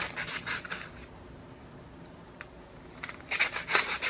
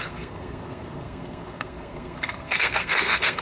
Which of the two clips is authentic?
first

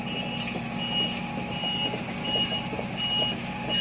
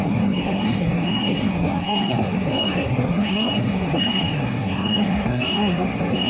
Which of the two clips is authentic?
first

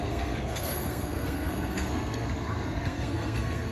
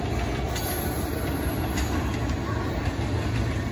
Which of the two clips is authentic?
second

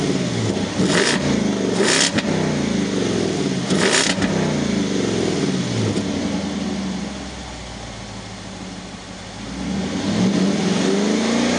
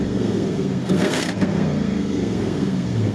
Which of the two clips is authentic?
first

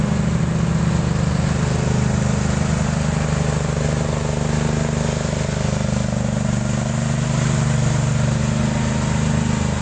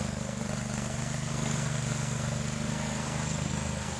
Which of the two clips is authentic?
first